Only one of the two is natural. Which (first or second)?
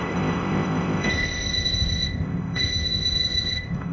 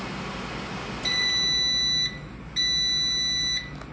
second